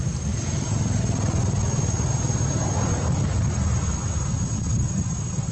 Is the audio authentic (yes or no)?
yes